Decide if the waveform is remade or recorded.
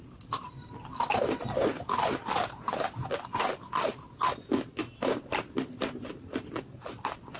recorded